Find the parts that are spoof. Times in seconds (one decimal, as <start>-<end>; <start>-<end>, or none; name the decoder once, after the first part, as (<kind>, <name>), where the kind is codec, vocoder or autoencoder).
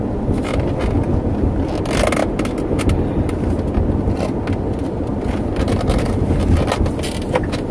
none